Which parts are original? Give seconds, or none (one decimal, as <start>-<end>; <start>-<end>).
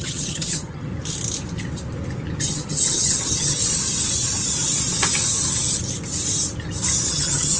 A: 0.9-2.4; 3.6-7.1